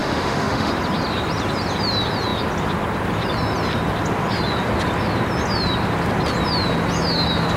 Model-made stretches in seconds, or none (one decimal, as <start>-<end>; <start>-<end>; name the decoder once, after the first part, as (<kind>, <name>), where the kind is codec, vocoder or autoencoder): 0.0-0.7 (autoencoder, DAC-VAE)